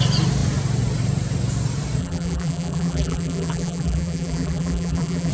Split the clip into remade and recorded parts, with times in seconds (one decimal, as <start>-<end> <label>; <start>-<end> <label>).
0.0-2.0 recorded; 2.0-5.3 remade